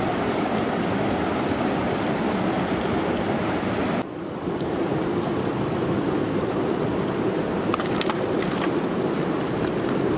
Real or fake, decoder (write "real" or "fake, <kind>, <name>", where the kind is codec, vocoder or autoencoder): real